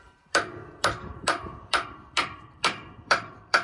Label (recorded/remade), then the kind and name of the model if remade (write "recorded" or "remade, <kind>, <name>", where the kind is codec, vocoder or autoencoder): remade, vocoder, BigVGAN v2